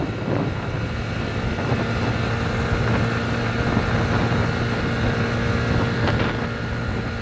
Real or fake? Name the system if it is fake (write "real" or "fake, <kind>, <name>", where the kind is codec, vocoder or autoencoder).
real